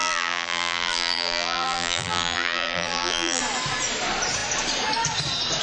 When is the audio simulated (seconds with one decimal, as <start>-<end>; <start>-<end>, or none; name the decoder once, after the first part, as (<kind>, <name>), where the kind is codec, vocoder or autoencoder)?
0.0-3.4 (vocoder, BigVGAN v2)